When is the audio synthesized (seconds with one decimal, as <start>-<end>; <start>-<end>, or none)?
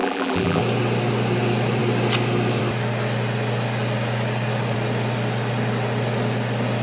0.0-0.6